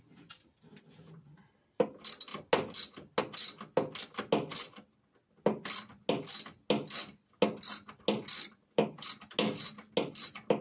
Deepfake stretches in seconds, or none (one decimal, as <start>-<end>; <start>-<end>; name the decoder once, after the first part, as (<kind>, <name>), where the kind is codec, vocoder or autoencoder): none

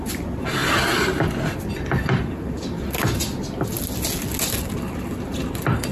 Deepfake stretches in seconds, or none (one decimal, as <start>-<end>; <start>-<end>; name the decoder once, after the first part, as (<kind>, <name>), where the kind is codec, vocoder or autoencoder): none